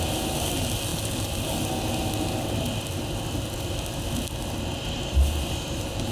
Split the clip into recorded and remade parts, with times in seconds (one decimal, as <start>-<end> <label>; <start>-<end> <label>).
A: 0.0-6.1 recorded